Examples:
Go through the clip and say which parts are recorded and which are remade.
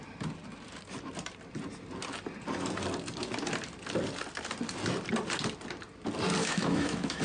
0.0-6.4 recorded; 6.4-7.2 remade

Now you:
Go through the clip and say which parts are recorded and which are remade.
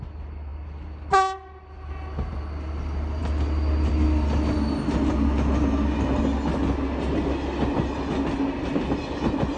0.0-9.6 recorded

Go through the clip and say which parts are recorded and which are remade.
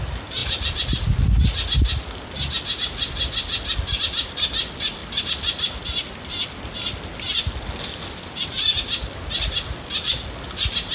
0.0-10.9 recorded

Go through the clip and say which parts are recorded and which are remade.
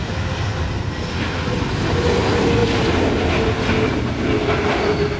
0.0-5.2 recorded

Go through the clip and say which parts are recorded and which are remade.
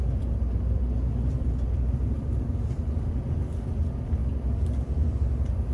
0.0-2.8 remade; 2.8-5.7 recorded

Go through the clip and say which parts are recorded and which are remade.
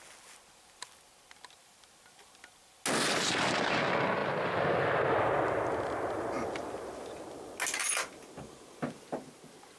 0.0-9.8 recorded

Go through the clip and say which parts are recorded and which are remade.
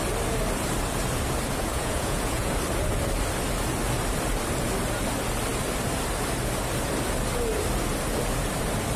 0.0-1.7 recorded; 1.7-2.5 remade; 2.5-9.0 recorded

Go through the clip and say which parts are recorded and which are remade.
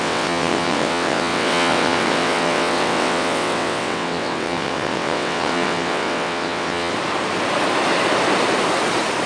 0.0-6.9 remade; 6.9-9.3 recorded